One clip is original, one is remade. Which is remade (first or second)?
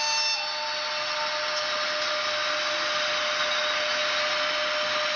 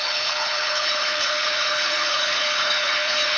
second